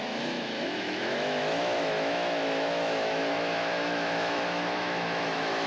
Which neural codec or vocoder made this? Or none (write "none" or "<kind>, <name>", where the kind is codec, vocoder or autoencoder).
autoencoder, DAC-VAE